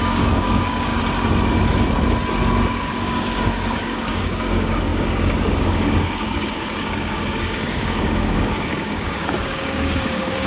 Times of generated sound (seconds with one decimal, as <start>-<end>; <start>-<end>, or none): 0.0-0.9; 2.7-10.5